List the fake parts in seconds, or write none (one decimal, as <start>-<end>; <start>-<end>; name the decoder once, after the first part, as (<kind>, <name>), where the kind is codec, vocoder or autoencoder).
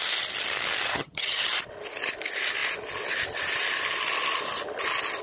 0.9-1.4 (vocoder, HiFi-GAN)